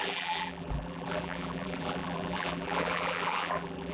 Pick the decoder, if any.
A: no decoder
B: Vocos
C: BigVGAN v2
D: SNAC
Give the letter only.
C